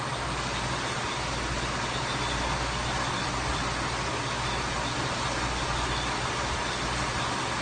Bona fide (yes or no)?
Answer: yes